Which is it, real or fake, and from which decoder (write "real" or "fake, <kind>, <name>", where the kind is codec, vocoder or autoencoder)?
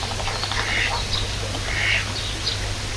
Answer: real